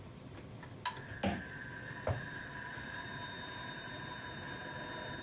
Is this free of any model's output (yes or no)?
yes